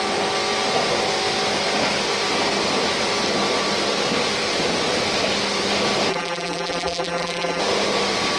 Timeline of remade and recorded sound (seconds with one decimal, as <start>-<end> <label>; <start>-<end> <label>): 0.0-6.1 recorded; 6.1-7.6 remade; 7.6-8.4 recorded